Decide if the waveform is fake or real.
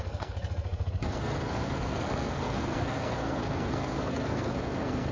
fake